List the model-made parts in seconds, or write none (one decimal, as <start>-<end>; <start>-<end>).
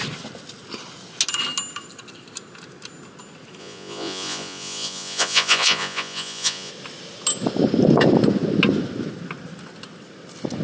3.6-6.7